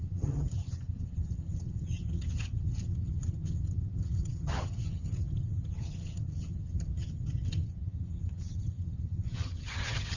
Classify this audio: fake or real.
fake